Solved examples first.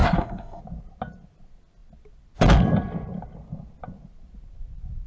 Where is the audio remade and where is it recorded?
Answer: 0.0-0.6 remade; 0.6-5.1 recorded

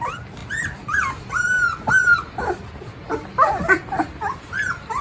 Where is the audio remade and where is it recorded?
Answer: 0.0-5.0 recorded

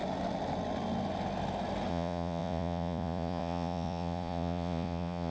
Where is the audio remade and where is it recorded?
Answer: 0.0-1.9 recorded; 1.9-5.3 remade

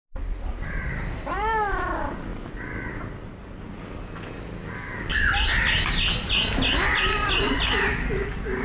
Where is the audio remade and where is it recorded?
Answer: 0.0-8.6 recorded

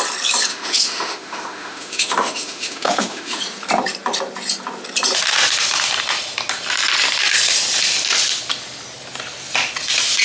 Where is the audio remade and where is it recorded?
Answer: 0.0-0.5 recorded; 0.5-3.4 remade; 3.4-10.2 recorded

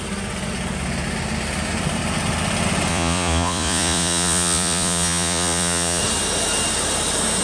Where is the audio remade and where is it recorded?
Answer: 0.0-2.9 recorded; 2.9-6.0 remade; 6.0-7.4 recorded

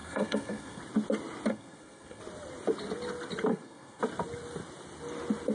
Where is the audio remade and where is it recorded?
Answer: 0.0-0.8 remade; 0.8-1.5 recorded; 1.5-2.2 remade; 2.2-3.5 recorded; 3.5-4.0 remade; 4.0-5.5 recorded

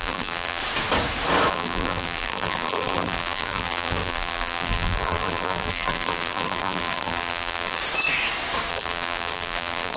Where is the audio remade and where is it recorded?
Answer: 0.0-0.6 remade; 0.6-1.5 recorded; 1.5-7.8 remade; 7.8-8.7 recorded; 8.7-10.0 remade